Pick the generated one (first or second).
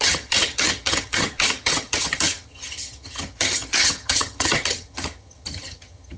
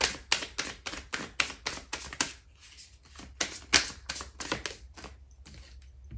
first